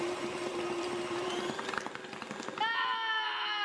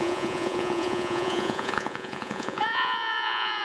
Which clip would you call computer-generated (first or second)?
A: second